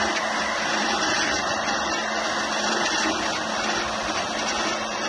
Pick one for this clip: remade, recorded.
recorded